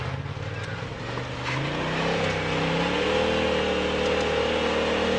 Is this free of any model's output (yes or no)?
yes